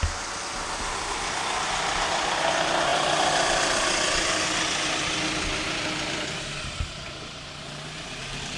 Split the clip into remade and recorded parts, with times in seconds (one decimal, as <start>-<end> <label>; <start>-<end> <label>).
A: 0.0-8.6 recorded